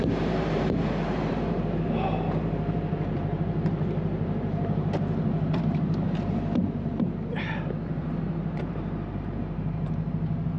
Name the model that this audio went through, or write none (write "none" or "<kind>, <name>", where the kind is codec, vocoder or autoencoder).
vocoder, BigVGAN v2